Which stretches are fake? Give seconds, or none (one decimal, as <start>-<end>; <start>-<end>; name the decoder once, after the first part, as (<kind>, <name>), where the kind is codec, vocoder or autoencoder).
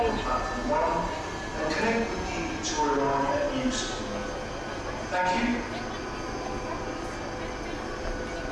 none